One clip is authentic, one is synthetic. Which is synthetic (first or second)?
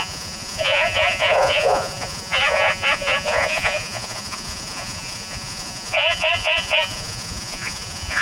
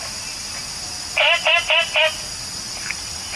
first